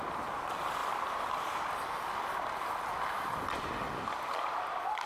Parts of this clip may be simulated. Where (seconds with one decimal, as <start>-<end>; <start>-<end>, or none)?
none